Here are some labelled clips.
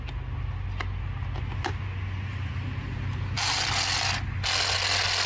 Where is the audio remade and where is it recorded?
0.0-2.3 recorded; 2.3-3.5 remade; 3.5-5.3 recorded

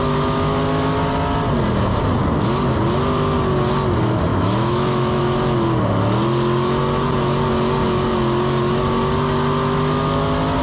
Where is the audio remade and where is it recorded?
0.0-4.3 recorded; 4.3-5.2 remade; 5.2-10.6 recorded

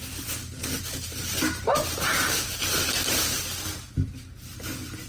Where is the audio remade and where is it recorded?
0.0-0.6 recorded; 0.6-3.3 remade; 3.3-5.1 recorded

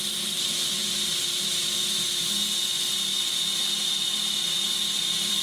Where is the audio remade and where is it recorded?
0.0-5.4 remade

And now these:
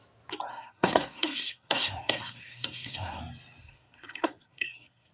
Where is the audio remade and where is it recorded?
0.0-0.5 recorded; 0.5-3.2 remade; 3.2-3.6 recorded; 3.6-5.1 remade

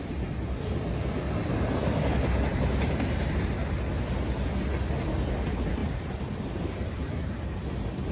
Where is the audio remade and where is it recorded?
0.0-2.5 recorded; 2.5-3.5 remade; 3.5-5.8 recorded; 5.8-7.4 remade; 7.4-8.1 recorded